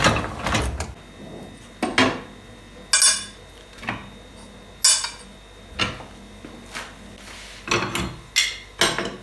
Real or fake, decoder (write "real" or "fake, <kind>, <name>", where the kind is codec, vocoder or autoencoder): real